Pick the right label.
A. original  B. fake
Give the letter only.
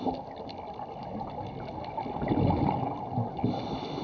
A